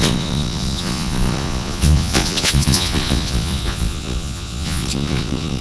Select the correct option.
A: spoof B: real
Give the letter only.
A